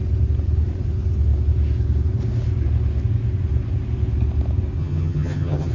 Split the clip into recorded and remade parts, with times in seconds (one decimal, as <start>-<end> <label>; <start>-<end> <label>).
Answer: 0.0-4.8 recorded; 4.8-5.7 remade